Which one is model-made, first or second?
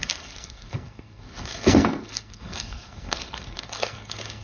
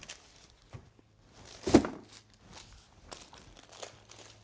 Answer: first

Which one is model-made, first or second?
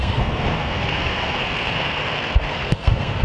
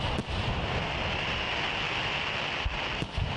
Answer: first